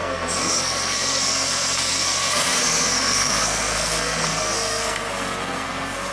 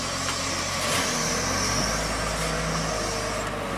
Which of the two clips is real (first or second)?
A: second